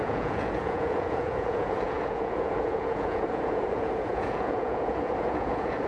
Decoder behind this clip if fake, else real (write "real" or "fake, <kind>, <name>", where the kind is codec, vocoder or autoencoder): fake, vocoder, Vocos